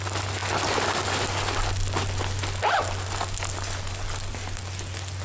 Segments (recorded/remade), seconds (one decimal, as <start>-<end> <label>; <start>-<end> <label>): 0.0-5.2 recorded